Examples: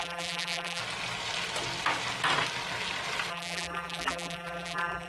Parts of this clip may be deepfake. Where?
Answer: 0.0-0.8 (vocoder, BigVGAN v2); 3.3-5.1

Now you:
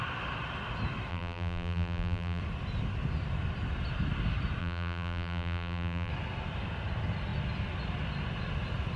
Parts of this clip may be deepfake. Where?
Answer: 1.1-2.4 (vocoder, BigVGAN v2); 4.6-6.1